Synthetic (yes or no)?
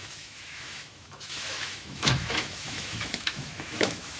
yes